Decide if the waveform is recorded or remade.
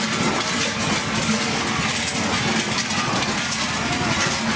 recorded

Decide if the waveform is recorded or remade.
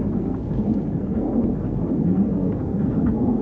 remade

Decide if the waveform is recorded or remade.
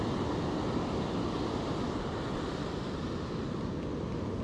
recorded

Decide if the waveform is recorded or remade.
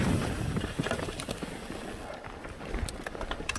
recorded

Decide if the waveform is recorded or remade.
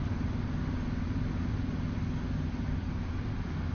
recorded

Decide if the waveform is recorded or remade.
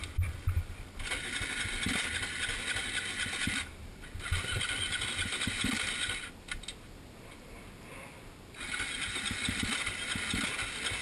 recorded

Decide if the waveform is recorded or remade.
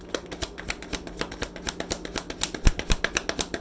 recorded